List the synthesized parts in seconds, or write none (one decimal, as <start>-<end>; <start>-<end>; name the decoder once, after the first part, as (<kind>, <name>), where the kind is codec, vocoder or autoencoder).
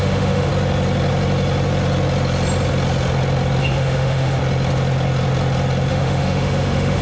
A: 0.0-0.5 (autoencoder, DAC-VAE); 3.6-4.4; 5.9-7.0